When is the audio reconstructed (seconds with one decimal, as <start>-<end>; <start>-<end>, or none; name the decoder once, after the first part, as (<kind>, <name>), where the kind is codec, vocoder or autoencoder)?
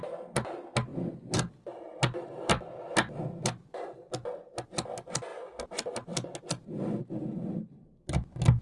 none